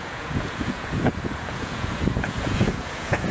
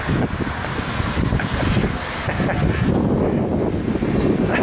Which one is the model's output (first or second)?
first